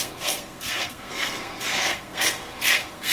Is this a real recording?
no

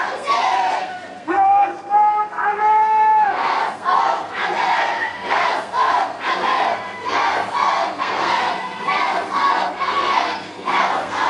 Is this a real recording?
no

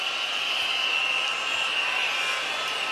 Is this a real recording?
yes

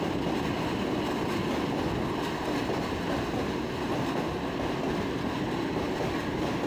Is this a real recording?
yes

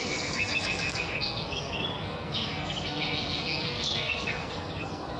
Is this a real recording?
no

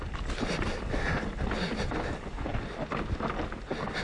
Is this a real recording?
yes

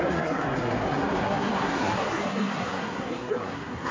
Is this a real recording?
no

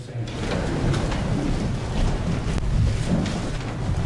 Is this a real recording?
yes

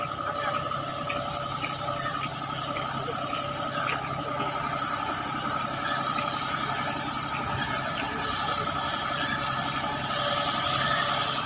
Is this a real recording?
yes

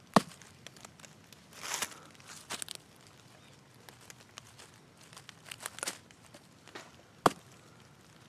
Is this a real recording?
yes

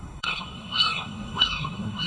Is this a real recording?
no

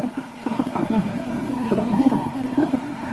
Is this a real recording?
no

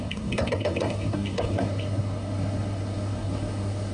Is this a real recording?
no